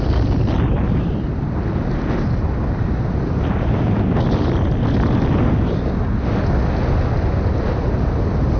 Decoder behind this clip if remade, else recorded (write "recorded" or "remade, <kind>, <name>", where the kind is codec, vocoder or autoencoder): recorded